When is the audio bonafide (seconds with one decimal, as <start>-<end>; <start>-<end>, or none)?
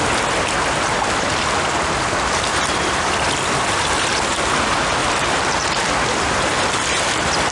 0.0-2.5; 3.1-5.0; 6.6-7.5